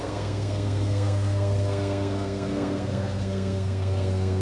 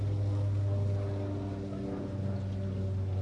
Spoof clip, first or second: first